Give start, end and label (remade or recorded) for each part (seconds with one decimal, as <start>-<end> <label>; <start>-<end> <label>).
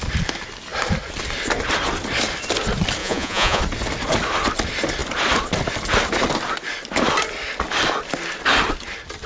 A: 0.0-3.0 recorded; 3.0-3.6 remade; 3.6-9.3 recorded